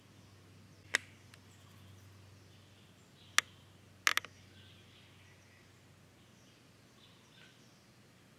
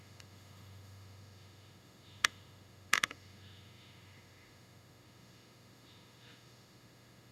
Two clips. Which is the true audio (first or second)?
first